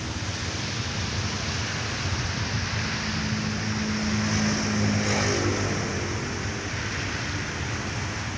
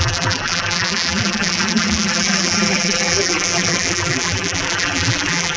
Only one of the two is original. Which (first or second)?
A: first